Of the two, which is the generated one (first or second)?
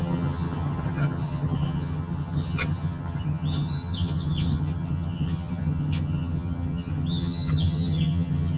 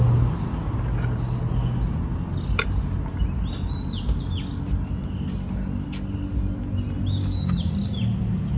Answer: first